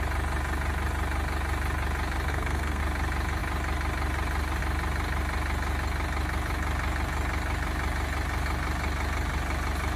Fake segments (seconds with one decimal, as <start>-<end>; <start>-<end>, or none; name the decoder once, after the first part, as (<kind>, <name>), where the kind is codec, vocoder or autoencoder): 2.3-2.8 (codec, SNAC)